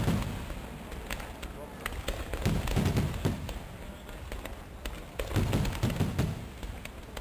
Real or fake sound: real